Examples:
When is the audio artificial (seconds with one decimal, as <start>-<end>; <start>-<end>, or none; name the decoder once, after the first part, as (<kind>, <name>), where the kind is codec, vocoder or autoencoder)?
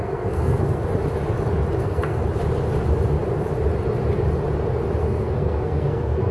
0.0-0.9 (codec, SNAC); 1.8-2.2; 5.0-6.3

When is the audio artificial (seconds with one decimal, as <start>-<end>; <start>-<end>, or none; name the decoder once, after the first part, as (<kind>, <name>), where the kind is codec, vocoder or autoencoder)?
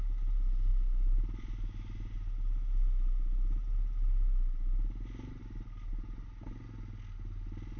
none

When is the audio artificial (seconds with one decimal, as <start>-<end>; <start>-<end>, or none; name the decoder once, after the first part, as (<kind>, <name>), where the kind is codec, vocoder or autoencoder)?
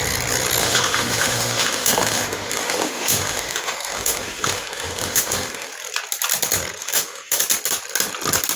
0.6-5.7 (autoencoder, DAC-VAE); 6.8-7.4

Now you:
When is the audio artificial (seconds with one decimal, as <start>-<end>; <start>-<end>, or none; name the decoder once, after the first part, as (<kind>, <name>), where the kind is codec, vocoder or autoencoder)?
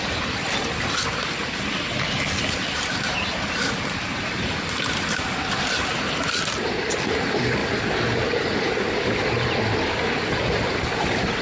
none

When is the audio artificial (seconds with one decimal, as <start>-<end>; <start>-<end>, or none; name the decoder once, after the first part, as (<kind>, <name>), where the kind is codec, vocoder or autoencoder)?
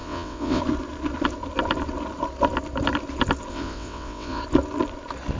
0.0-0.6 (vocoder, WaveNeXt); 3.5-4.4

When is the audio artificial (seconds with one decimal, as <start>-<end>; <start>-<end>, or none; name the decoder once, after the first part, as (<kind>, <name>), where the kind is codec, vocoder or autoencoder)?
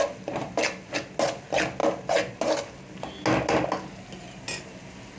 none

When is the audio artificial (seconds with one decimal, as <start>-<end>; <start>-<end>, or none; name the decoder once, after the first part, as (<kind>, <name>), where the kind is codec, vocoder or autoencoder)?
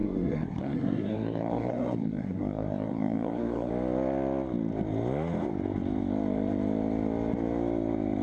0.0-3.7 (codec, SNAC)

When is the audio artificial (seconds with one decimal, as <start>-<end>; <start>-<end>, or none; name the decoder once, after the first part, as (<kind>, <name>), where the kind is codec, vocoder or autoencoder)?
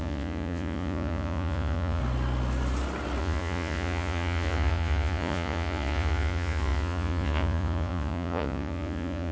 0.0-2.0 (vocoder, Vocos); 3.2-9.3